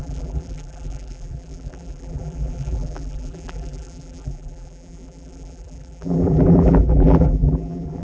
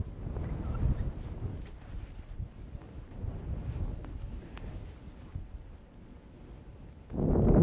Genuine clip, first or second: second